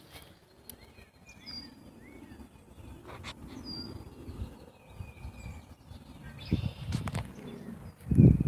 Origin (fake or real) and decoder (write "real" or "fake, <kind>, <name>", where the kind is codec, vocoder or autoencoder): real